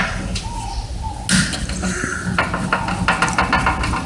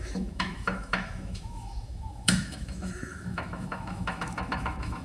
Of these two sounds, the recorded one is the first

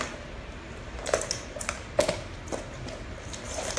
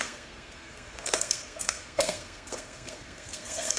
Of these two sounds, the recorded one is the first